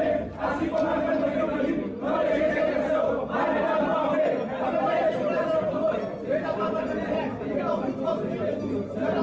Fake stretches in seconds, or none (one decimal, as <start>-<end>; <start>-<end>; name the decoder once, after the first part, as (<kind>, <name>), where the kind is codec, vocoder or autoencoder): 4.5-8.0 (vocoder, BigVGAN v2)